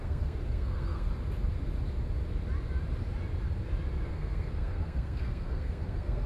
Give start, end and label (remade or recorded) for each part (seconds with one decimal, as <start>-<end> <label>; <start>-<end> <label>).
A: 0.0-1.1 remade; 1.1-4.1 recorded; 4.1-6.3 remade